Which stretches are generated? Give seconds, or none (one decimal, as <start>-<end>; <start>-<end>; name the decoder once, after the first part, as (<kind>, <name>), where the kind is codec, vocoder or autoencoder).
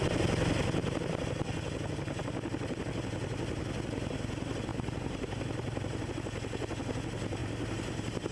4.7-6.1 (vocoder, BigVGAN v2); 7.4-8.3